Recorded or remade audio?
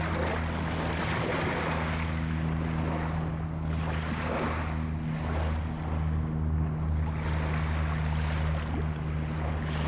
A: recorded